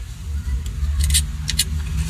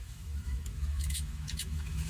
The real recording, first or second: first